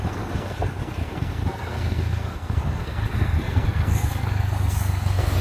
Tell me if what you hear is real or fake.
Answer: fake